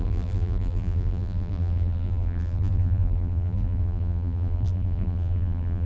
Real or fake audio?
fake